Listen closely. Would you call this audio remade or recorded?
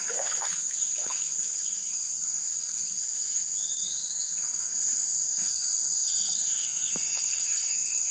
remade